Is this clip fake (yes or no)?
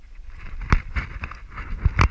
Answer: no